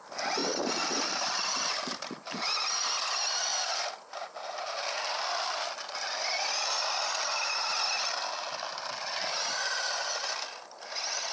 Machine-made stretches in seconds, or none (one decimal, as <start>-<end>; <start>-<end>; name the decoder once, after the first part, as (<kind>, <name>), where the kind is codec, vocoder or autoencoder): 0.4-2.5 (vocoder, BigVGAN v2)